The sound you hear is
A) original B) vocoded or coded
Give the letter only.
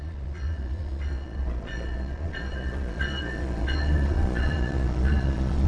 B